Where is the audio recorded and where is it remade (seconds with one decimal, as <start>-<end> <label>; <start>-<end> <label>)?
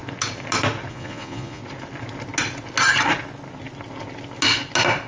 0.0-0.9 recorded; 0.9-1.6 remade; 1.6-5.1 recorded